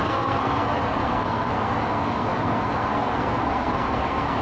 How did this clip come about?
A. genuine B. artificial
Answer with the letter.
B